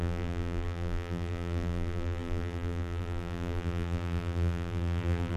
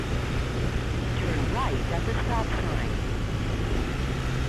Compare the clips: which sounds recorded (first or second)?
second